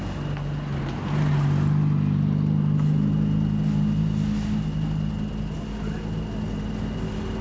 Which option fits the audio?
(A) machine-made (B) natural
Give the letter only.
B